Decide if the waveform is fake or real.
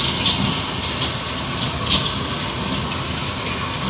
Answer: real